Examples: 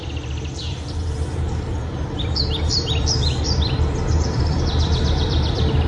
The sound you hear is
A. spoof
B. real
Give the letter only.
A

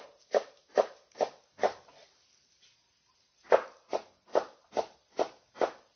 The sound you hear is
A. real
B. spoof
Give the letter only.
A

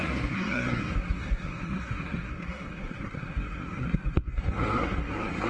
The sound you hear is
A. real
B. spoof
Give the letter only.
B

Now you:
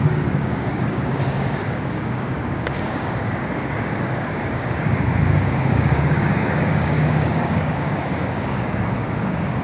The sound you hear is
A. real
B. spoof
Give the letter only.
B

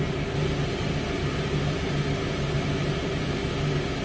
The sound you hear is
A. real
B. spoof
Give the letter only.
A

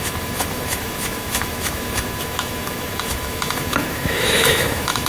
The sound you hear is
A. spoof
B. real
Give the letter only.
A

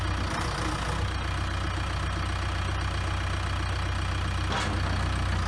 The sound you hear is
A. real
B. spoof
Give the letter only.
A